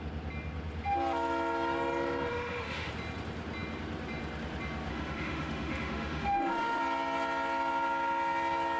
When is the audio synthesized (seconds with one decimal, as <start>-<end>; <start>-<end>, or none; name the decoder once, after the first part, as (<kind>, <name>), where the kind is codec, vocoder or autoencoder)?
2.3-2.9 (autoencoder, DAC-VAE); 4.9-6.8